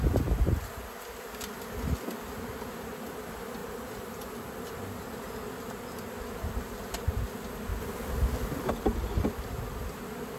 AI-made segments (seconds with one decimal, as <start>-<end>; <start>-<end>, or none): none